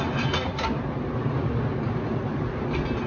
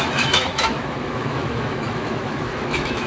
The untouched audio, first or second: first